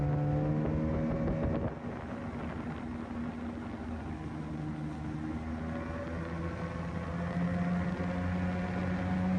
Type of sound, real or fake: real